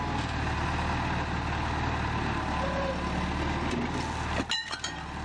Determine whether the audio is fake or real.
real